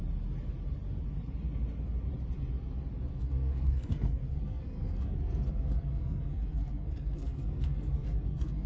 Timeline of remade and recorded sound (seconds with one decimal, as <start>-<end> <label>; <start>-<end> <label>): 0.0-3.1 recorded; 3.1-8.7 remade